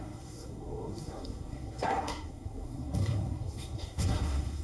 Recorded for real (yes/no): no